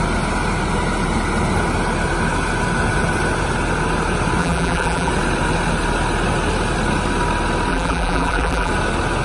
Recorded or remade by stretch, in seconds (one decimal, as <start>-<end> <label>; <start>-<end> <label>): 0.0-4.4 recorded; 4.4-5.1 remade; 5.1-7.7 recorded; 7.7-8.7 remade; 8.7-9.2 recorded